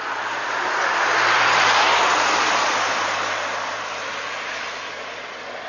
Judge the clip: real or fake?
real